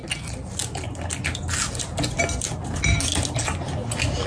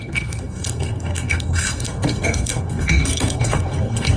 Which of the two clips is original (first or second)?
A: first